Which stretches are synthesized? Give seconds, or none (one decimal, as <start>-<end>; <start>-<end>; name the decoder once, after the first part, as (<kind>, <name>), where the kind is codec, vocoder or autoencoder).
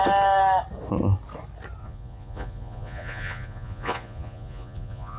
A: 1.8-5.2 (vocoder, Vocos)